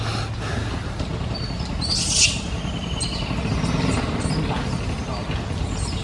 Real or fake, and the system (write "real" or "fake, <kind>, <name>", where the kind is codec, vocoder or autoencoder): real